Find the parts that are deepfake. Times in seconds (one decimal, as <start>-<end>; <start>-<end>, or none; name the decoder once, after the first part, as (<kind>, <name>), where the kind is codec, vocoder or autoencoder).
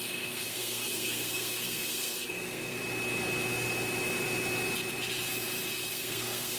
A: 0.0-2.8 (codec, SNAC); 5.9-6.6